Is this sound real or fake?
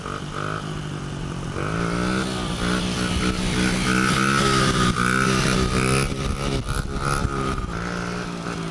real